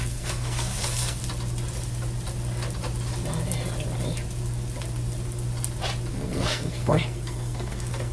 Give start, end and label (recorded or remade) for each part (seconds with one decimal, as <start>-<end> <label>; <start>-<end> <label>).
0.0-1.2 remade; 1.2-6.1 recorded; 6.1-8.1 remade